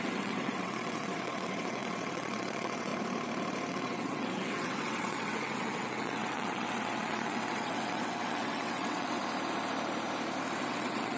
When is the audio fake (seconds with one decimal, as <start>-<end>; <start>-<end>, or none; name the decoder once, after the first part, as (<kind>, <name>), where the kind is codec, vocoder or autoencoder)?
0.0-2.9 (vocoder, WaveNeXt); 3.7-9.2; 10.6-11.2